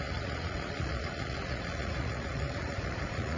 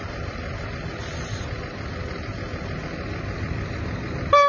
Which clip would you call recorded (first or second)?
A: second